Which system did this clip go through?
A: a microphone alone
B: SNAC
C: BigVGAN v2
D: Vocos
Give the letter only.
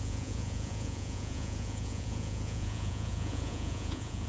D